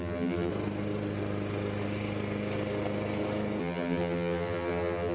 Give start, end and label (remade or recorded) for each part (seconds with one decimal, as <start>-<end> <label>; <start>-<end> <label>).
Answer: 0.0-0.5 remade; 0.5-3.6 recorded; 3.6-5.1 remade